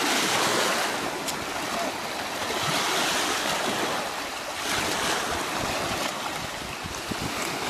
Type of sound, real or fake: real